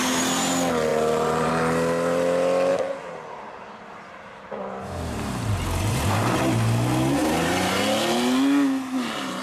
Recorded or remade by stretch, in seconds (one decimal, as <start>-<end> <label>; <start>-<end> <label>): 0.0-0.9 recorded; 0.9-1.5 remade; 1.5-2.7 recorded; 2.7-6.4 remade; 6.4-7.2 recorded; 7.2-7.8 remade; 7.8-9.4 recorded